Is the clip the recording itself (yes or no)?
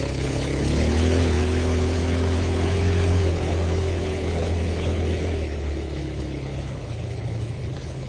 no